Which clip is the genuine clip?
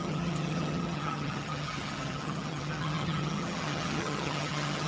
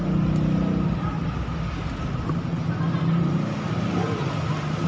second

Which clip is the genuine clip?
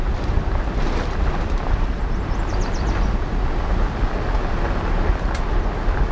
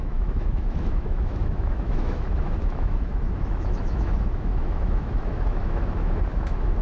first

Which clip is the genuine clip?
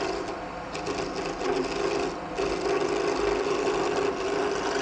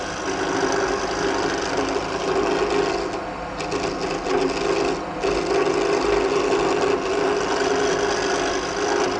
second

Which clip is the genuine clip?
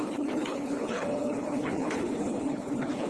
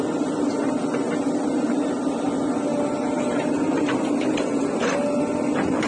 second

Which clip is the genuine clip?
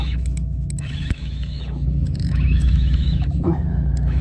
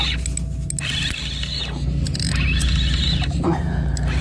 second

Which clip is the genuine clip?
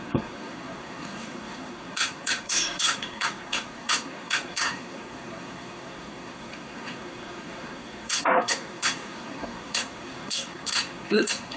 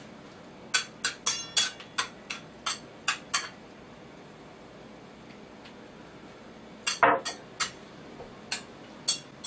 second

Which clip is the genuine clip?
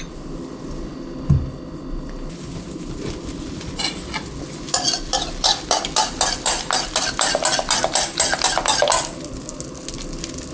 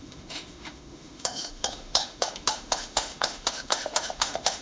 first